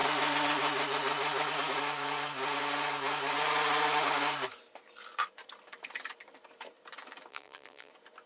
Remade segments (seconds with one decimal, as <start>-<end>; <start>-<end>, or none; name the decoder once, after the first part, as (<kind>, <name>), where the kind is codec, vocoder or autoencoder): 7.3-7.9 (vocoder, BigVGAN v2)